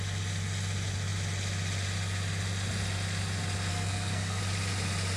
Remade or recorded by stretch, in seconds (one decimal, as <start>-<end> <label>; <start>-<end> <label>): 0.0-3.7 recorded; 3.7-4.4 remade; 4.4-5.2 recorded